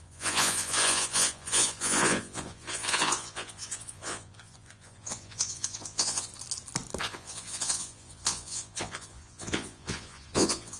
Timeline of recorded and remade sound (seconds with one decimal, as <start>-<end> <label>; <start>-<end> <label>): 0.0-6.3 remade; 6.3-7.0 recorded; 7.0-10.8 remade